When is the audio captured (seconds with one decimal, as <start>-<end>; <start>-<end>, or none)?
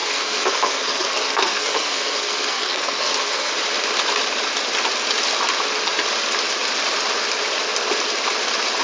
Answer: 3.5-8.8